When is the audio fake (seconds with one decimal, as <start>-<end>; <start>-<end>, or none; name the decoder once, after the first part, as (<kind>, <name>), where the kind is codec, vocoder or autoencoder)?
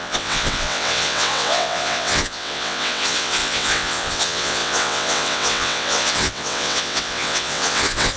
0.0-8.2 (vocoder, WaveNeXt)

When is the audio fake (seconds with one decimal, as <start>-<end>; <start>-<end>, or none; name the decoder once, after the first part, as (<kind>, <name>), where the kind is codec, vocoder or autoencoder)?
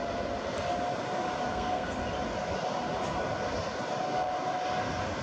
1.5-2.0 (codec, SNAC)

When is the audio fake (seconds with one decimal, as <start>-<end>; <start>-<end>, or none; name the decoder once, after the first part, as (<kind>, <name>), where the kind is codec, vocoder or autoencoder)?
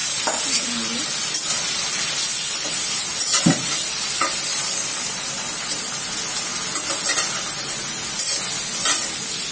2.3-5.8 (vocoder, BigVGAN v2)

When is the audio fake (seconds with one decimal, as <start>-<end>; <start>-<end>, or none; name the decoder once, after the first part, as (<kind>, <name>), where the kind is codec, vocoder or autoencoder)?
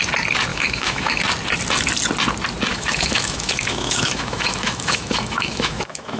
0.5-1.2 (autoencoder, DAC-VAE); 2.7-6.2